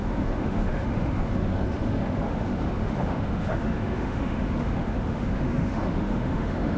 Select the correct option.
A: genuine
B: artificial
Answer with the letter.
B